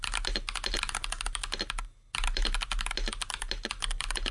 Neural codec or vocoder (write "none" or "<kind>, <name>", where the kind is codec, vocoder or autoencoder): none